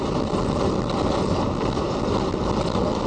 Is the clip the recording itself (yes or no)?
yes